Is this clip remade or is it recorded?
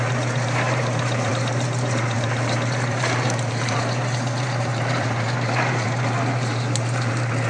remade